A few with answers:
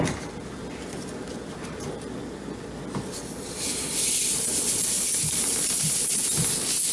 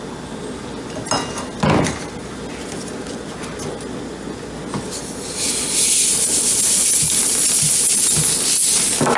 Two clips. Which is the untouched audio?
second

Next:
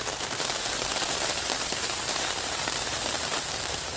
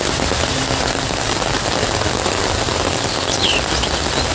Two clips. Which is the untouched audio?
second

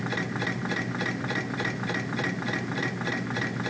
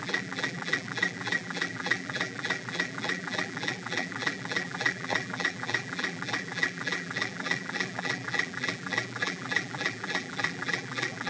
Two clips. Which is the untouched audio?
first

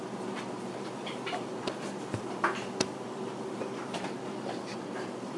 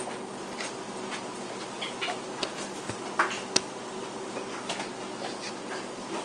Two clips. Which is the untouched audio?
second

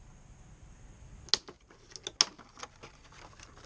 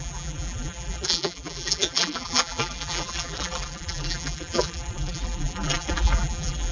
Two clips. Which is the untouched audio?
first